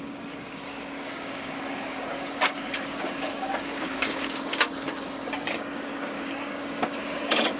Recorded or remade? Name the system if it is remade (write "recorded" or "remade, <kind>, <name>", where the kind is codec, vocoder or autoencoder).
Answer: remade, codec, DAC